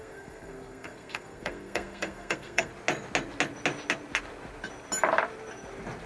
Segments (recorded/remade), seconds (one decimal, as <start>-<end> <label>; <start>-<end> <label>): 0.0-2.7 remade; 2.7-6.1 recorded